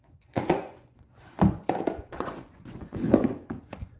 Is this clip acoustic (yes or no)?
no